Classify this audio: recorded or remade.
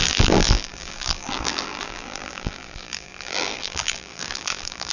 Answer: remade